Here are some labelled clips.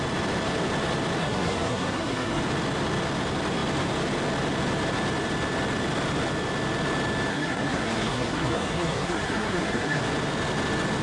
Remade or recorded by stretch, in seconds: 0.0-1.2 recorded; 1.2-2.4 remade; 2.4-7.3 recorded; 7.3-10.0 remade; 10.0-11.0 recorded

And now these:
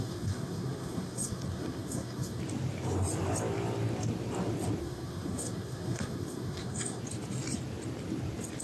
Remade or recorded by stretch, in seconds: 0.0-2.4 remade; 2.4-4.8 recorded; 4.8-7.0 remade; 7.0-8.6 recorded

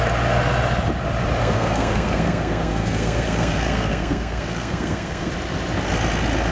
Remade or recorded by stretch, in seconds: 0.0-1.4 recorded; 1.4-5.3 remade; 5.3-6.5 recorded